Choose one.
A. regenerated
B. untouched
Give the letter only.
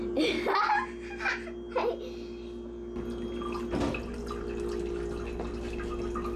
B